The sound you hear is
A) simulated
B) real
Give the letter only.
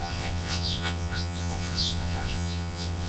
A